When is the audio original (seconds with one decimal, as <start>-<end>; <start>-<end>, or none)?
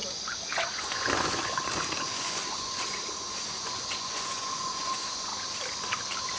5.3-6.4